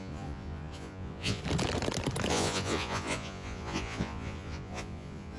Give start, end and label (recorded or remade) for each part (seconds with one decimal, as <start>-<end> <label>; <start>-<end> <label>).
0.0-1.4 remade; 1.4-2.3 recorded; 2.3-5.4 remade